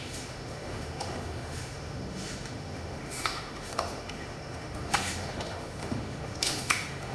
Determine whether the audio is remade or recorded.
remade